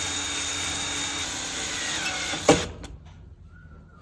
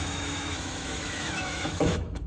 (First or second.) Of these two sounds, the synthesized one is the second